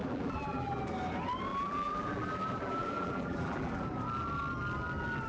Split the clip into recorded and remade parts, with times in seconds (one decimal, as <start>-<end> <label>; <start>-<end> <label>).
0.0-0.8 remade; 0.8-1.5 recorded; 1.5-3.8 remade; 3.8-5.3 recorded

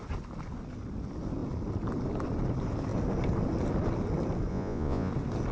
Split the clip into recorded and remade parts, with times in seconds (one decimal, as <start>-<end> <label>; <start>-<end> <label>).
0.0-4.5 recorded; 4.5-5.1 remade; 5.1-5.5 recorded

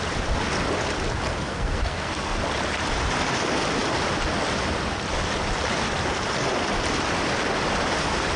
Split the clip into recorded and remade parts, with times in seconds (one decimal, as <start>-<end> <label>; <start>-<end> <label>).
0.0-1.3 recorded; 1.3-2.4 remade; 2.4-8.4 recorded

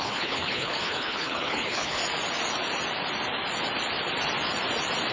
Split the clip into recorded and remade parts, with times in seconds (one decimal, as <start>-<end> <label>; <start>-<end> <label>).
0.0-2.0 remade; 2.0-5.1 recorded

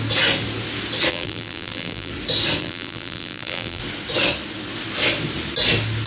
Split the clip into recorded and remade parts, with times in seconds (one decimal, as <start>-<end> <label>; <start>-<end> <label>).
0.0-1.1 recorded; 1.1-2.1 remade; 2.1-2.6 recorded; 2.6-3.8 remade; 3.8-6.1 recorded

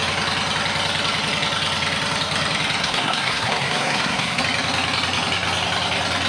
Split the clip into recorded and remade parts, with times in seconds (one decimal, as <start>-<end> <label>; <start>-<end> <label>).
0.0-2.8 recorded; 2.8-4.4 remade; 4.4-6.3 recorded